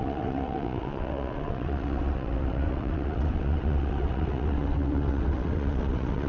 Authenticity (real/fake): fake